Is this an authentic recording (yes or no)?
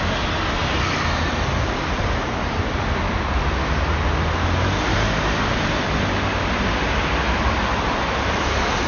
yes